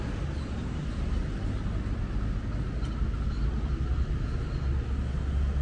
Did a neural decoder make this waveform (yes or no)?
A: no